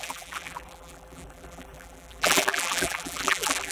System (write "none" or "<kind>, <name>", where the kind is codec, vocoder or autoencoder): vocoder, BigVGAN v2